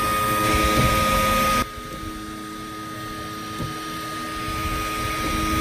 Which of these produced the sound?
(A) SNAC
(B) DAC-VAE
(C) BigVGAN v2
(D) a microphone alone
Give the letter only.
D